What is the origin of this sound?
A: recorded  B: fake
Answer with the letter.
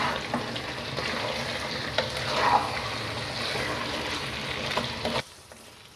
A